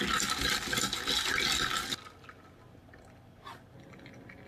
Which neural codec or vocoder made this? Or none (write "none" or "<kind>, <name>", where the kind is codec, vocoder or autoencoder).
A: none